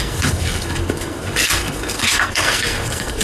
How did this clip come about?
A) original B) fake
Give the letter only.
B